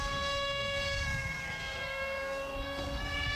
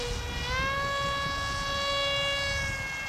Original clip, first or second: second